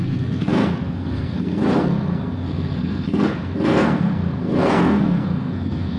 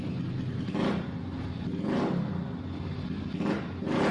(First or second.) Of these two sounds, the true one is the second